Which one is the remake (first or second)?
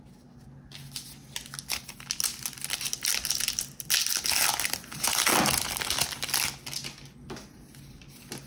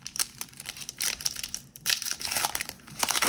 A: second